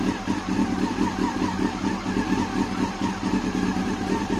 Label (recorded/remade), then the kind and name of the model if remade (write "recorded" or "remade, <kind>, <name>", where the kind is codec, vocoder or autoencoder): recorded